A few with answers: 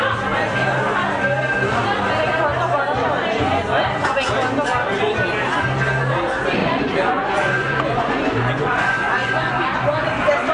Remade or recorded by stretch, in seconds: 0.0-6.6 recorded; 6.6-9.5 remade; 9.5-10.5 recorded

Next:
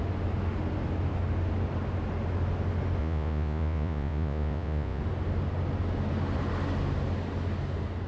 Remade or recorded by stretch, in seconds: 0.0-3.0 recorded; 3.0-5.0 remade; 5.0-8.1 recorded

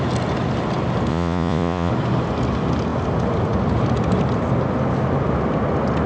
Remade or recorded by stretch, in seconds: 0.0-1.1 recorded; 1.1-1.9 remade; 1.9-6.1 recorded